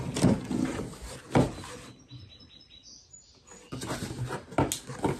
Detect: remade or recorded recorded